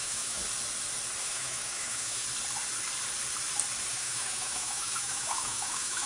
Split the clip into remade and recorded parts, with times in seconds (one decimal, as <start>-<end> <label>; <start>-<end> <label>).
0.0-0.4 remade; 0.4-1.2 recorded; 1.2-2.2 remade; 2.2-3.9 recorded; 3.9-6.1 remade